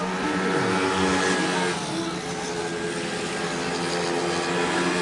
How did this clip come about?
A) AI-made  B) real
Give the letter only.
B